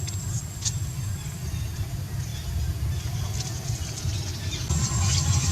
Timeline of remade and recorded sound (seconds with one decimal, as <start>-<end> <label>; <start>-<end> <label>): 0.0-5.5 recorded